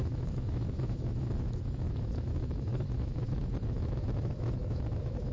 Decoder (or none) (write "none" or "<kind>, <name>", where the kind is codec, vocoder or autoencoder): autoencoder, DAC-VAE